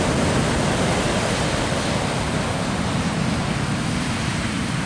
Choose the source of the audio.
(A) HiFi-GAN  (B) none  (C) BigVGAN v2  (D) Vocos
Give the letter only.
B